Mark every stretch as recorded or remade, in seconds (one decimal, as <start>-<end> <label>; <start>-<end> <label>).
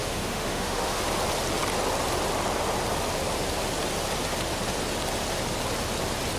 0.0-1.0 remade; 1.0-6.4 recorded